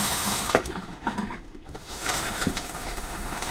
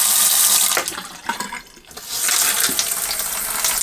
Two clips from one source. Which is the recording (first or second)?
second